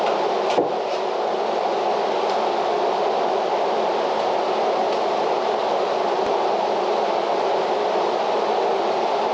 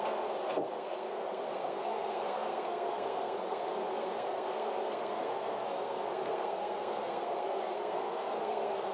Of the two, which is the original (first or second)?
first